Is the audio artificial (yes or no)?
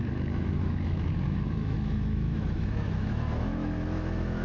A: yes